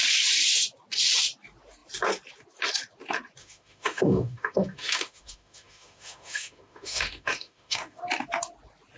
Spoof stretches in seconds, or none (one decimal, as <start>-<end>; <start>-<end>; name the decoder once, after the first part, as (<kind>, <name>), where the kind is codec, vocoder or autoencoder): 3.4-8.0 (autoencoder, DAC-VAE)